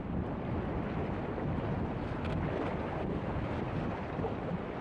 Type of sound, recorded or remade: recorded